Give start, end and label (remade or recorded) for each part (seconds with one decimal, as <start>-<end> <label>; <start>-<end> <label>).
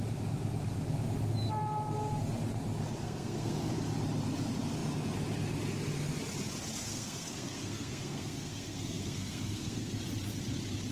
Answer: 0.0-3.0 recorded; 3.0-3.7 remade; 3.7-6.9 recorded; 6.9-10.0 remade; 10.0-10.9 recorded